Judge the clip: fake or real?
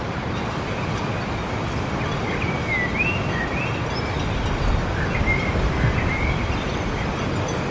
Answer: real